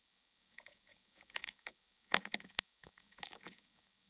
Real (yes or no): no